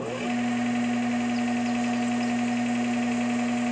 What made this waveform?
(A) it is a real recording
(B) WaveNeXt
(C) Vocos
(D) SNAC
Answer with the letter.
A